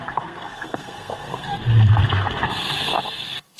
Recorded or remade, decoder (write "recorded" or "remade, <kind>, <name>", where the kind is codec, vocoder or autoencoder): remade, codec, SNAC